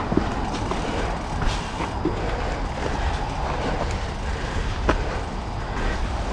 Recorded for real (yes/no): yes